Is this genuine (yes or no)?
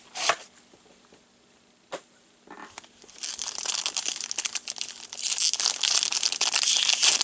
yes